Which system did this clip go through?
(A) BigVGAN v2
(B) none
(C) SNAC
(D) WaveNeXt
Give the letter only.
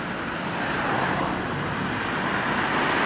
B